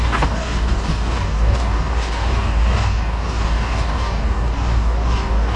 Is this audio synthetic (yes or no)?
yes